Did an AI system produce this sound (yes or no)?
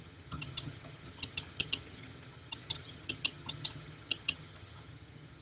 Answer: yes